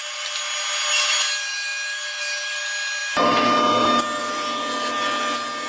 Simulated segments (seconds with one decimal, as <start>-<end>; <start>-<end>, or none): none

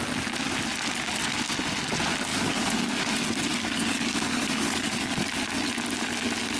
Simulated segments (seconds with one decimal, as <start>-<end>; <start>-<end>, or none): 2.3-3.0; 3.5-5.2

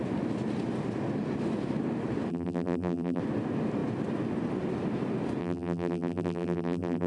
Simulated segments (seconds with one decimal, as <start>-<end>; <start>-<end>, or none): 2.3-3.2; 5.4-7.1

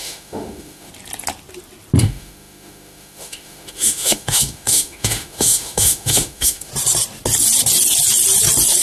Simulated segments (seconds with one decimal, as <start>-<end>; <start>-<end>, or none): 0.0-0.9; 2.0-6.7

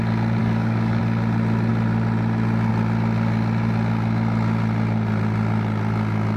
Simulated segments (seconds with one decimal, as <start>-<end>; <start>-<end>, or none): 0.4-1.0

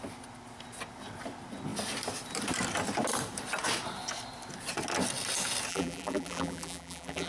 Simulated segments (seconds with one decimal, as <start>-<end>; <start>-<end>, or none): 5.7-7.3

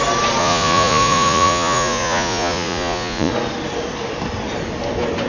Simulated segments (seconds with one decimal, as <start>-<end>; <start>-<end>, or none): 0.4-3.3